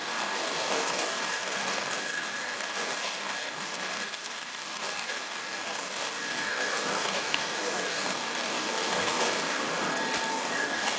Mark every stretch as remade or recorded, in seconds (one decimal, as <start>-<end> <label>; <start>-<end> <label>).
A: 0.0-9.8 remade; 9.8-10.3 recorded; 10.3-11.0 remade